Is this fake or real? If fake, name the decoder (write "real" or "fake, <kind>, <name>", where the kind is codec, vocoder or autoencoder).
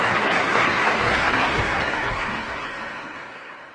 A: fake, codec, SNAC